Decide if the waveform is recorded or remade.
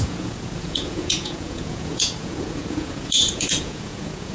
remade